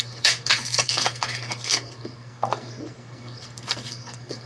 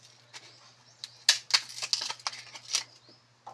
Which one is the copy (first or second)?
first